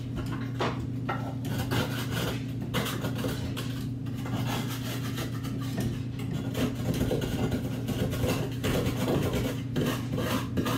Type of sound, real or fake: real